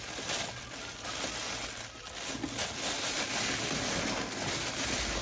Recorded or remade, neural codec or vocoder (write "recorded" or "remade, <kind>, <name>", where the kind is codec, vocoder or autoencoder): recorded